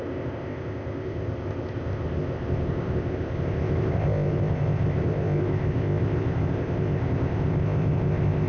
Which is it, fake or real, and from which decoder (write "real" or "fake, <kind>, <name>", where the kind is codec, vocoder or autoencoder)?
fake, codec, ZipCodec